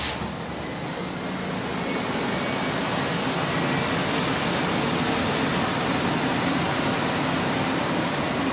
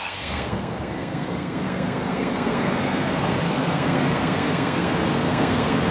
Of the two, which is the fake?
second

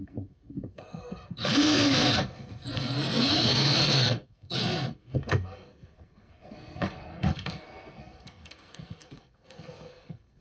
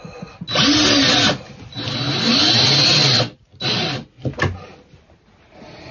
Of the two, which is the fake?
first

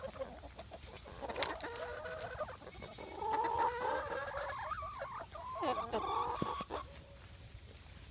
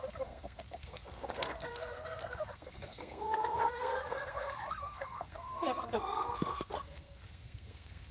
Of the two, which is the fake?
second